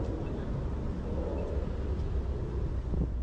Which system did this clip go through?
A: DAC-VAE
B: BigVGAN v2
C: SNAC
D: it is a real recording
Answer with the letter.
D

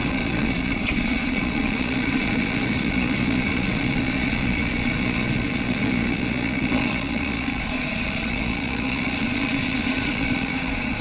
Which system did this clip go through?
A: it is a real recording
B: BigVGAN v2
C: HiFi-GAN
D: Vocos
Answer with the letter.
D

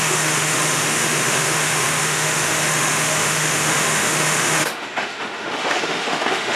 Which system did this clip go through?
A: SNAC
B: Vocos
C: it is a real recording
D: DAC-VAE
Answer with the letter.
D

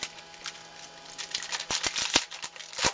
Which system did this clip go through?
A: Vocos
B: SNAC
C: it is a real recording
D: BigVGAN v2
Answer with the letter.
C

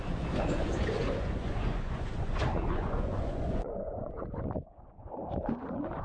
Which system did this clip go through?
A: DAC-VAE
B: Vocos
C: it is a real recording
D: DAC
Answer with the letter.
B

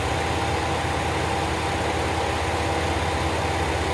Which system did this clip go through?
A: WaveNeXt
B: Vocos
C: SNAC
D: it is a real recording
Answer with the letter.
D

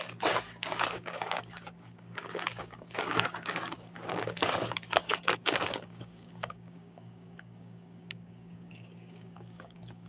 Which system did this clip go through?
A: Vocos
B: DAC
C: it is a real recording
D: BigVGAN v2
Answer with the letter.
B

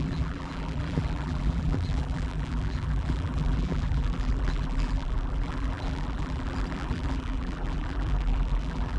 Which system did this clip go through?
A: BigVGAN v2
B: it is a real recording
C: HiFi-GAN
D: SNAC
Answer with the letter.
A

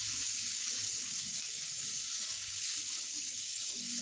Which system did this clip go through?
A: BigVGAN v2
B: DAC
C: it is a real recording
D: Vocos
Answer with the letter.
B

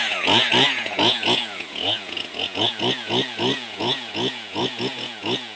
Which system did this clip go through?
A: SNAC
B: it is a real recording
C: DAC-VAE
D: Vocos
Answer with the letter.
D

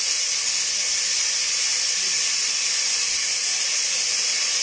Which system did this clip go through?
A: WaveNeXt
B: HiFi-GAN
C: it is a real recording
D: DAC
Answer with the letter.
C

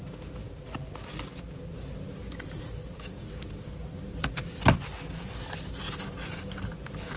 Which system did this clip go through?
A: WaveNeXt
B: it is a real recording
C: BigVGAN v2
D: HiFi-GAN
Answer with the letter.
B